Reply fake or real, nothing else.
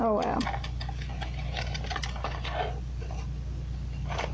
real